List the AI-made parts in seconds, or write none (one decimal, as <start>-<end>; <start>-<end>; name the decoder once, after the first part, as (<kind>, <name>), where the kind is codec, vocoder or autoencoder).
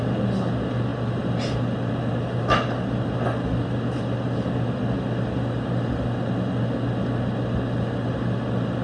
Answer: none